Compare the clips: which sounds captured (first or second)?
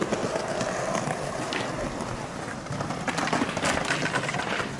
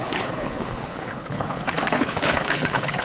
first